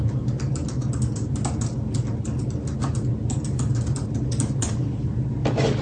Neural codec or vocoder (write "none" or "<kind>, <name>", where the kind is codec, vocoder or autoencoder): none